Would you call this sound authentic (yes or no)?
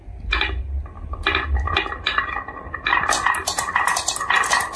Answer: yes